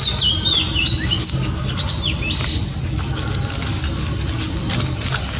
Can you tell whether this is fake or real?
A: real